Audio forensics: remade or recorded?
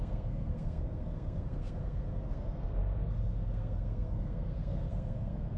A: remade